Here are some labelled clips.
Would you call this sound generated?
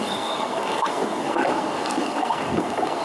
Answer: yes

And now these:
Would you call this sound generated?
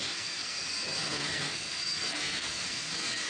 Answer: yes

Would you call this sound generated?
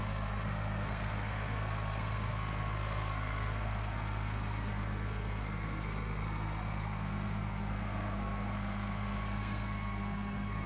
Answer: yes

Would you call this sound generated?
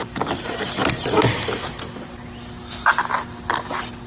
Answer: no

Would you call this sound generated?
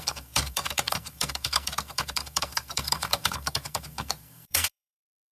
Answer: yes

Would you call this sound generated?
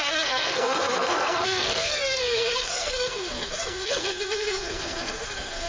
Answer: yes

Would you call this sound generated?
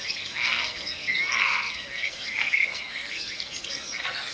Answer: yes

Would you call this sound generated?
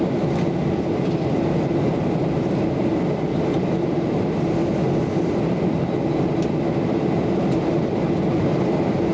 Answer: no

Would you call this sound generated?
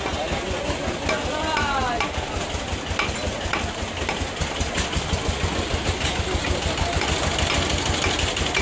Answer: no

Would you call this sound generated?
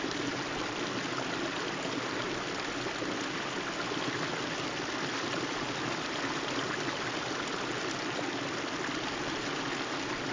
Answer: no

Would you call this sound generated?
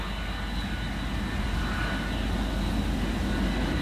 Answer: no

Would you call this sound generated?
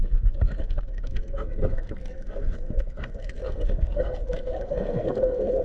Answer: yes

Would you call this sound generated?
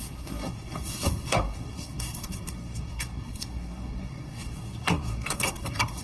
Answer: yes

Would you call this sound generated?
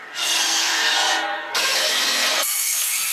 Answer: yes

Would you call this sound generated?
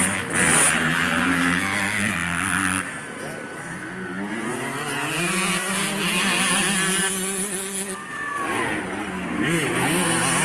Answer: no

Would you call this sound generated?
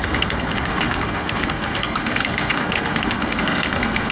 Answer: yes